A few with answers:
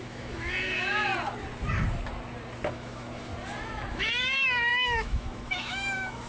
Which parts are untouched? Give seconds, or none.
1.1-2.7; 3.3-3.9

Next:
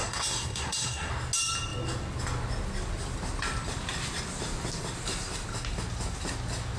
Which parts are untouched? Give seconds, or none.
1.1-6.8